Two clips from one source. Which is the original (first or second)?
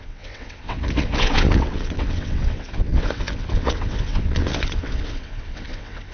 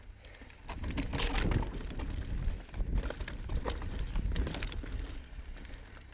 second